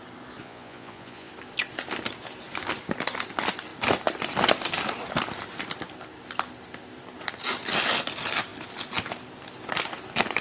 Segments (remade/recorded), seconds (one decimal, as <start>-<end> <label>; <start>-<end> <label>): 0.0-0.4 recorded; 0.4-1.3 remade; 1.3-10.4 recorded